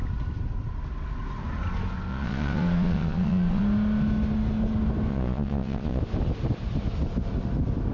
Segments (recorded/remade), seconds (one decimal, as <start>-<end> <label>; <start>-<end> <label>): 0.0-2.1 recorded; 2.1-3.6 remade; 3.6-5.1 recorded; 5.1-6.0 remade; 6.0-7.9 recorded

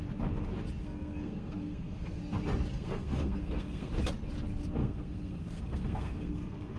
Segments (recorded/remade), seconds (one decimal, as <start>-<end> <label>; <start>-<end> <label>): 0.0-0.8 recorded; 0.8-2.2 remade; 2.2-2.7 recorded; 2.7-3.9 remade; 3.9-4.8 recorded; 4.8-6.8 remade

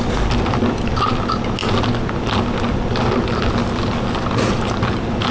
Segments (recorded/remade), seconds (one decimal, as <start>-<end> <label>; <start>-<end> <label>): 0.0-5.3 recorded

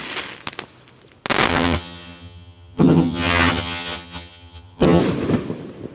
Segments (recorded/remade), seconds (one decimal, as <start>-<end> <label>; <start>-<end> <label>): 0.0-1.5 recorded; 1.5-5.0 remade; 5.0-5.9 recorded

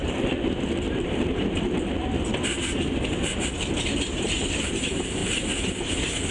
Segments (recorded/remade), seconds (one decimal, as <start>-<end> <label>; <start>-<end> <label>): 0.0-2.0 remade; 2.0-3.8 recorded; 3.8-5.2 remade; 5.2-6.3 recorded

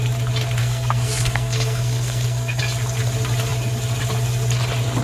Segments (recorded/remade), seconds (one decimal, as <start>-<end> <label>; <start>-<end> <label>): 0.0-0.6 recorded; 0.6-2.6 remade; 2.6-5.0 recorded

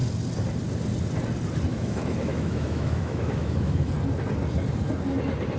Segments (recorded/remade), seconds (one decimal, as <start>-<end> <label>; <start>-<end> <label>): 0.0-1.7 recorded; 1.7-3.9 remade; 3.9-5.6 recorded

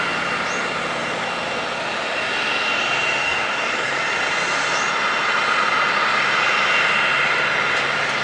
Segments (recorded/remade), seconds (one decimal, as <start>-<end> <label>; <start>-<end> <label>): 0.0-3.2 recorded; 3.2-3.9 remade; 3.9-8.2 recorded